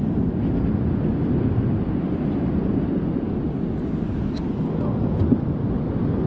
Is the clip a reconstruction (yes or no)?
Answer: no